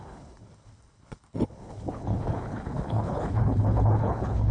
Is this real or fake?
fake